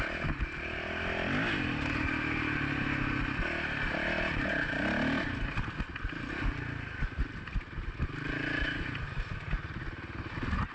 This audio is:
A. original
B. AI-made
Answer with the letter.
A